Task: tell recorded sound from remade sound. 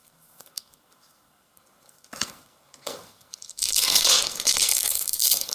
remade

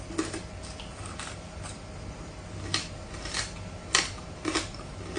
recorded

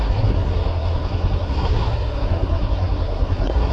remade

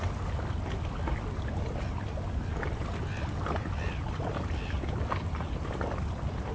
recorded